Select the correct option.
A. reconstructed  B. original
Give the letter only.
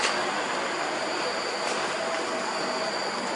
B